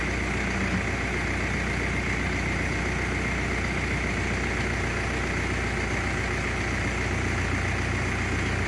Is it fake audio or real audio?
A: real